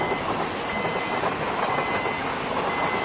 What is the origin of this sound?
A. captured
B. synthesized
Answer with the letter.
A